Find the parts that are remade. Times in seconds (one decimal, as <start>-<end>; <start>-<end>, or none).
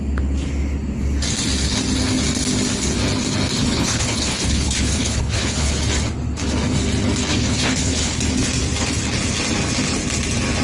3.5-5.7; 7.3-8.2